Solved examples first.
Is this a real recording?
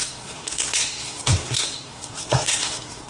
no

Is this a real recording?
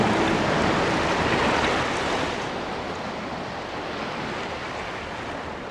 yes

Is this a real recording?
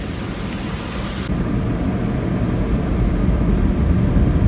yes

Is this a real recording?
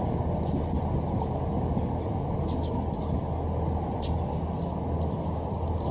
yes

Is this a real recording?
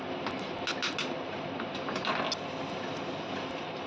yes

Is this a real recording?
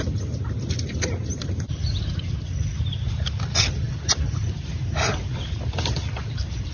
yes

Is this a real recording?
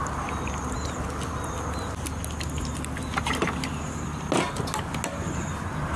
yes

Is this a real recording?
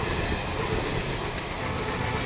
yes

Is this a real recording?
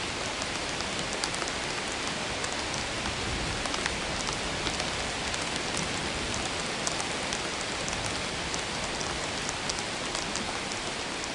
yes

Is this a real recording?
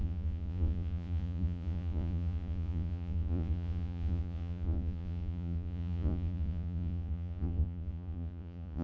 no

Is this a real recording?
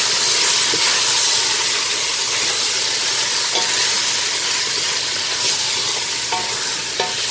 yes